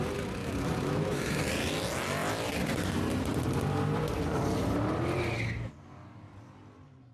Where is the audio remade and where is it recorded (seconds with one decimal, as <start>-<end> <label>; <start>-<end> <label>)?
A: 0.0-0.4 recorded; 0.4-1.4 remade; 1.4-7.1 recorded

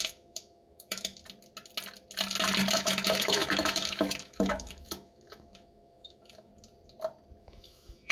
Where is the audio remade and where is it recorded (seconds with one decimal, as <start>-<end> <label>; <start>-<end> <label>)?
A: 0.0-1.2 remade; 1.2-2.7 recorded; 2.7-6.5 remade; 6.5-7.4 recorded; 7.4-8.1 remade